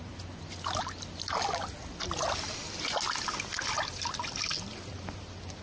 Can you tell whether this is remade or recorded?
recorded